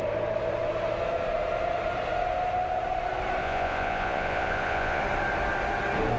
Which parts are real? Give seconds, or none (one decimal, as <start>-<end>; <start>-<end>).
0.0-3.4; 5.0-6.2